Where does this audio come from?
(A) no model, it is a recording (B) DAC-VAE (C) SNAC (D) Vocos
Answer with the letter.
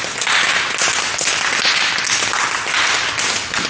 A